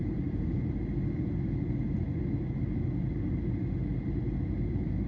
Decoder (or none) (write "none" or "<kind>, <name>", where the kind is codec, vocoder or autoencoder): none